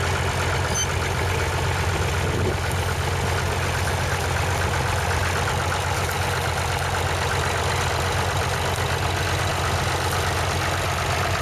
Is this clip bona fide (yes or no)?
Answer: yes